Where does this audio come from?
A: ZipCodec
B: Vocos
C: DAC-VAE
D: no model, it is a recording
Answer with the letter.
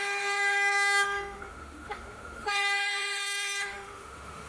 C